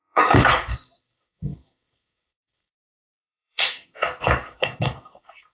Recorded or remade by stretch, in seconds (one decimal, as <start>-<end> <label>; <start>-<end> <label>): 0.0-5.5 remade